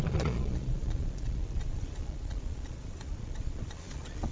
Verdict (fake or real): fake